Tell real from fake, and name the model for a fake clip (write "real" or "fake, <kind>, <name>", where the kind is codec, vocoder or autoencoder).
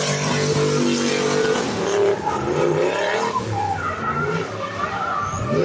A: real